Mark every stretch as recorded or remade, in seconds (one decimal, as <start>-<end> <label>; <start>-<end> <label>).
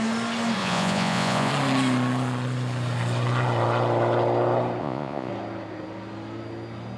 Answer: 0.0-0.6 recorded; 0.6-1.5 remade; 1.5-4.8 recorded; 4.8-5.3 remade; 5.3-7.0 recorded